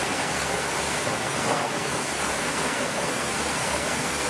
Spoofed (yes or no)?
yes